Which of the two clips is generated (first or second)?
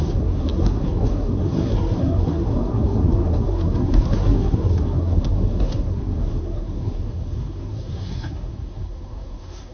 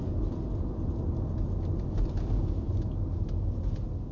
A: first